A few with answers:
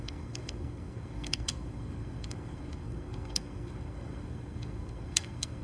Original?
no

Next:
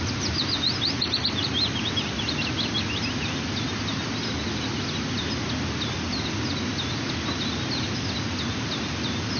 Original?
yes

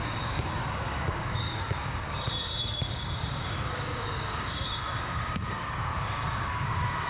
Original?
no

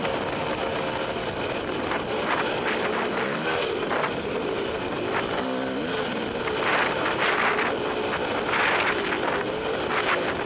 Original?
yes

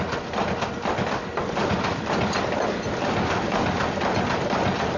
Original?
yes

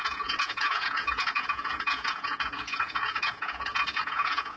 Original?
no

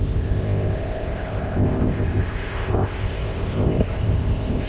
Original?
no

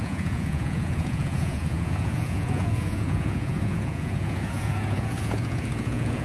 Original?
no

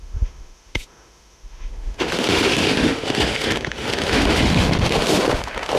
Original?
no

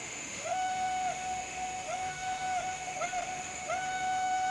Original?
no